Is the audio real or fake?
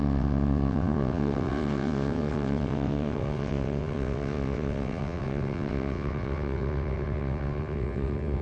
fake